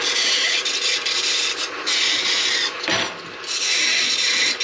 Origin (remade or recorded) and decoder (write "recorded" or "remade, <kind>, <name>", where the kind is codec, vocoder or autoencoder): recorded